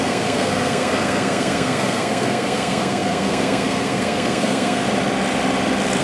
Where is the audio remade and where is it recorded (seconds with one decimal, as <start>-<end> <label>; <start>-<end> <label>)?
0.0-4.8 remade; 4.8-6.0 recorded